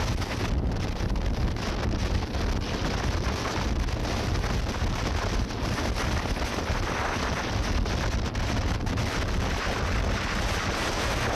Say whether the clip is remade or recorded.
recorded